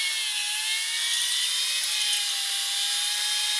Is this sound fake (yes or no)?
no